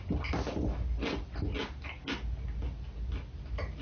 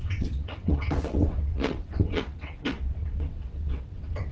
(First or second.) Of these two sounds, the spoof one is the second